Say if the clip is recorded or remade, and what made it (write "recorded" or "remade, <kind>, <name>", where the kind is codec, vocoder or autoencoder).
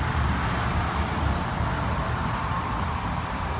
remade, vocoder, BigVGAN v2